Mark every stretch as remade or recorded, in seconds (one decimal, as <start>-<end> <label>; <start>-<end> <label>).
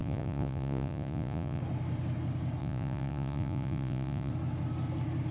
0.0-1.6 remade; 1.6-2.6 recorded; 2.6-4.3 remade; 4.3-5.3 recorded